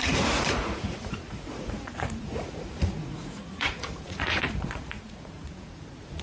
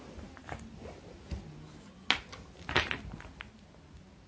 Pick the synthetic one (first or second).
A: first